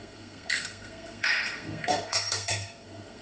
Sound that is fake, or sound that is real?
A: fake